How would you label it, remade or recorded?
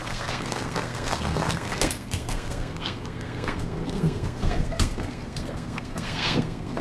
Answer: remade